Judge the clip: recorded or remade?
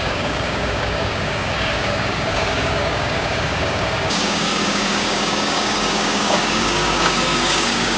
remade